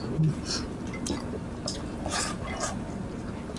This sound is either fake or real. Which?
real